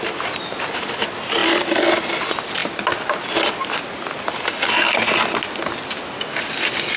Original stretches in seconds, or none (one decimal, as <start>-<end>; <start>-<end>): 0.0-7.0